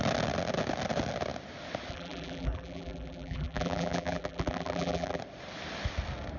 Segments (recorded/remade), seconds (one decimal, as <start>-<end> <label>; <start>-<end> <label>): 0.0-1.9 recorded; 1.9-5.2 remade; 5.2-6.4 recorded